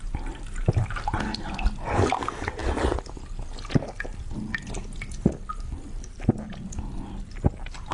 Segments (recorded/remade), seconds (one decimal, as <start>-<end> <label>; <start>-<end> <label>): 0.0-7.9 recorded